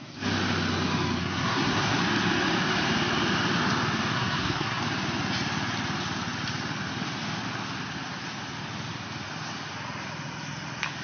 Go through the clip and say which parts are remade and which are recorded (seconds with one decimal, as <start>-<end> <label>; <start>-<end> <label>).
0.0-1.2 recorded; 1.2-2.0 remade; 2.0-4.1 recorded; 4.1-4.8 remade; 4.8-11.0 recorded